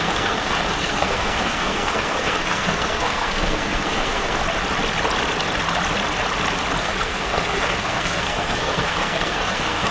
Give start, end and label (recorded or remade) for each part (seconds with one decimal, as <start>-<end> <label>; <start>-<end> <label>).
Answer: 0.0-4.4 remade; 4.4-6.8 recorded; 6.8-9.9 remade